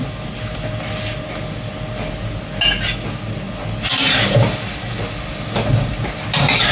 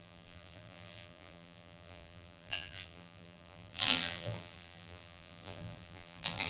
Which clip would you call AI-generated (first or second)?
second